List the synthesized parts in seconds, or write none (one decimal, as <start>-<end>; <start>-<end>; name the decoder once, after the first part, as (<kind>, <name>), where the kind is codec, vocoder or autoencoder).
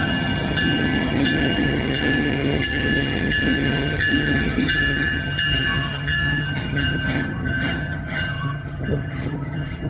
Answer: 0.0-9.9 (vocoder, HiFi-GAN)